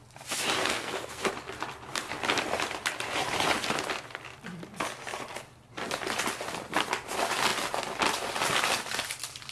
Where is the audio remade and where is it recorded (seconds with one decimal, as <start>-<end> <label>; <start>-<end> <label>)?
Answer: 0.0-0.6 recorded; 0.6-1.3 remade; 1.3-9.5 recorded